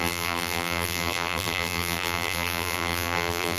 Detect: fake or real fake